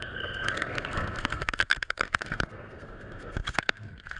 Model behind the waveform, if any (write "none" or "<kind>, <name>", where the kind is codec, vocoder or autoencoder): codec, SNAC